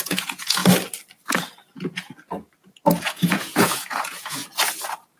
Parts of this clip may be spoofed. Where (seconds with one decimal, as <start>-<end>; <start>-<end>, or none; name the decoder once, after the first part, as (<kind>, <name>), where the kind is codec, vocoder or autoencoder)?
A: 0.0-0.6 (vocoder, Vocos); 3.0-4.4